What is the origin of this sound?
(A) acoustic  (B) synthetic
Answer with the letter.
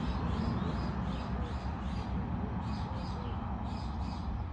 A